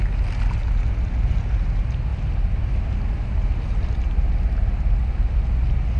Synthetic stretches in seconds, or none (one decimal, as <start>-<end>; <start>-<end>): none